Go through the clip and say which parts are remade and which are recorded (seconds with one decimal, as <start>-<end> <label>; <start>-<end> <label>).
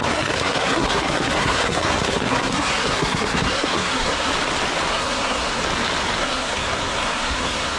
0.0-4.3 remade; 4.3-4.9 recorded; 4.9-5.6 remade; 5.6-6.2 recorded; 6.2-7.8 remade